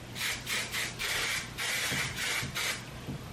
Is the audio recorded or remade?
recorded